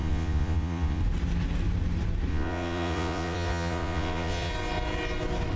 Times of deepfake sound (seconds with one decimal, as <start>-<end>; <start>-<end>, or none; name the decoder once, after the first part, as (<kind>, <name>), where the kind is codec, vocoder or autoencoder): 0.0-1.0 (vocoder, Vocos); 2.3-4.5